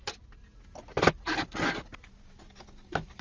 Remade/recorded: recorded